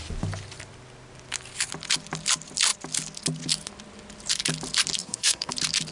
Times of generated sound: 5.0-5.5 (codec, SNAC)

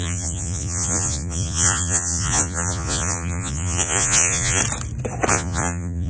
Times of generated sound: 0.0-4.6 (vocoder, Vocos); 5.3-6.1

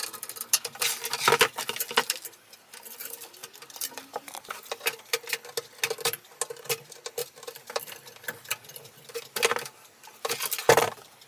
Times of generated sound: 3.0-5.3 (vocoder, BigVGAN v2); 7.2-8.1